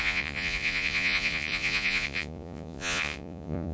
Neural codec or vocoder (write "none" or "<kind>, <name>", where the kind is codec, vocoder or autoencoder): vocoder, Vocos